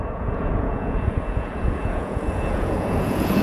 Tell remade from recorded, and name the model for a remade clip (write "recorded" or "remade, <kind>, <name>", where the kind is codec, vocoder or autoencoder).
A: remade, vocoder, Vocos